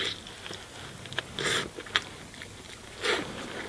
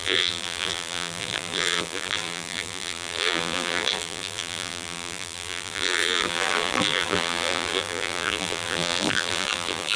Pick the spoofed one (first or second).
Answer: second